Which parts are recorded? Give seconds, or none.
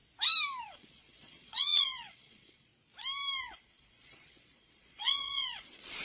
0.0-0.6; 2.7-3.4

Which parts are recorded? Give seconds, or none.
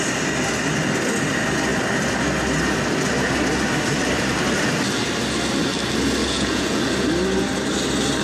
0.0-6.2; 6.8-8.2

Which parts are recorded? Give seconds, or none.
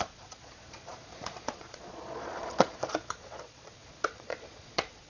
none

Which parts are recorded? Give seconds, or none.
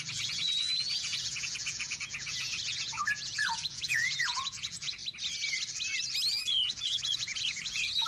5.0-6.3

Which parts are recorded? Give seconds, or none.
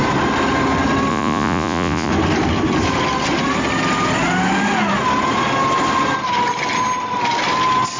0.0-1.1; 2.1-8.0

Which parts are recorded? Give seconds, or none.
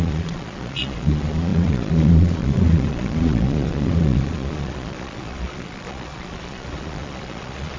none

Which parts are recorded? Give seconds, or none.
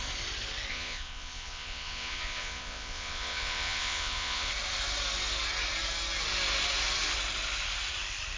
0.0-0.7; 4.5-8.4